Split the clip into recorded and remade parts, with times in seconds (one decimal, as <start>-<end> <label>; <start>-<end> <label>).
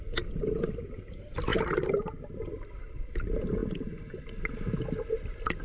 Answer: 0.0-5.6 recorded